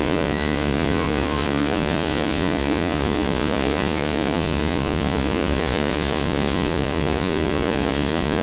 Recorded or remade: remade